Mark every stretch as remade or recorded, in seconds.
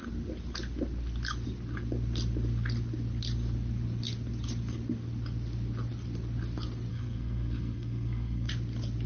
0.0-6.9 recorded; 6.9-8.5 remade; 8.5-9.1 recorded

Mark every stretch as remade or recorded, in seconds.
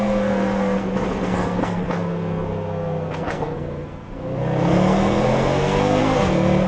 0.0-6.7 remade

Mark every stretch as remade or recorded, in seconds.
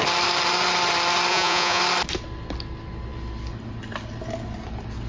0.0-1.3 recorded; 1.3-1.8 remade; 1.8-5.1 recorded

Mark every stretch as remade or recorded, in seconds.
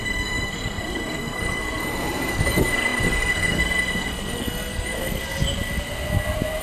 0.0-1.8 remade; 1.8-2.3 recorded; 2.3-5.2 remade; 5.2-6.6 recorded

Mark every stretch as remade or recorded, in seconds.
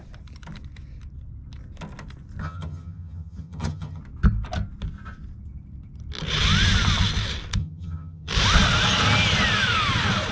0.0-2.4 recorded; 2.4-4.0 remade; 4.0-7.6 recorded; 7.6-8.3 remade; 8.3-10.3 recorded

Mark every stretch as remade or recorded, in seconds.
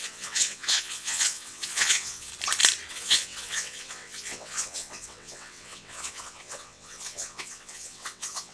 0.0-2.3 remade; 2.3-2.9 recorded; 2.9-8.5 remade